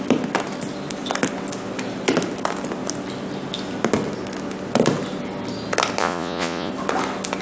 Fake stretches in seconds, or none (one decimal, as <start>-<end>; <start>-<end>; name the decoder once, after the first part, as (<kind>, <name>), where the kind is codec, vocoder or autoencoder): 6.0-6.7 (vocoder, Vocos)